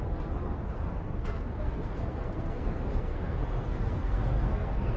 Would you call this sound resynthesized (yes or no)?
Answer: yes